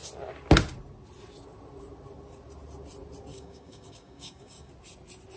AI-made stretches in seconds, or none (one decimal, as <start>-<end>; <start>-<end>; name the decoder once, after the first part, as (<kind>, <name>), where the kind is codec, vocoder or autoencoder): 3.3-4.7 (codec, DAC)